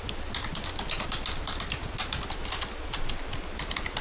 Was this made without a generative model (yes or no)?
yes